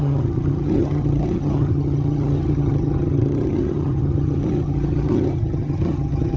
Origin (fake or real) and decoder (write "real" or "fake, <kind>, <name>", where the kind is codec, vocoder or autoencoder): fake, vocoder, HiFi-GAN